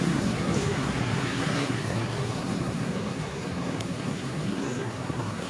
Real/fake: fake